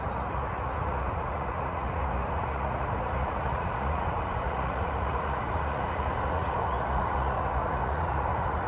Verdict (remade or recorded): remade